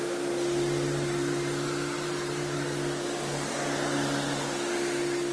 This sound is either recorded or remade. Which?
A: recorded